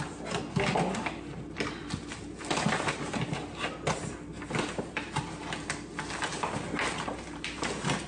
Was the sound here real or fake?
real